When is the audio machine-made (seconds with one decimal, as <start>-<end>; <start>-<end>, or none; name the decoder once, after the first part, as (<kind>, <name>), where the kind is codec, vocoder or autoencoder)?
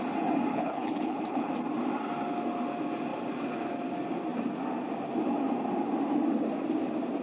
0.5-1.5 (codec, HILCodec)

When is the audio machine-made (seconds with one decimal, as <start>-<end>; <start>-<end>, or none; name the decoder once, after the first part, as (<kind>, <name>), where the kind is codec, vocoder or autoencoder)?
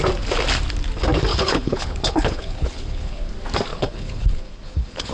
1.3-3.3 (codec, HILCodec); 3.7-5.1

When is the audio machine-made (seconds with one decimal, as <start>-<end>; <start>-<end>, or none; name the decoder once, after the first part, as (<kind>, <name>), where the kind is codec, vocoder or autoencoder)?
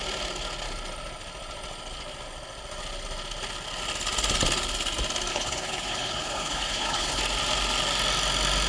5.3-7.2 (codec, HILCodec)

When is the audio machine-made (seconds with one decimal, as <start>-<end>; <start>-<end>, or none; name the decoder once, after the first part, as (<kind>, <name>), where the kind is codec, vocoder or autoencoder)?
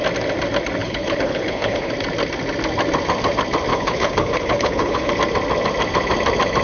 0.8-1.9 (codec, HILCodec); 3.7-5.1